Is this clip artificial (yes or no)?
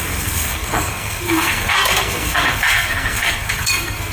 yes